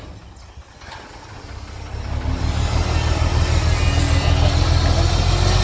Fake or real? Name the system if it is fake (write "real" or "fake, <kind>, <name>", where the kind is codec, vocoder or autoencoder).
real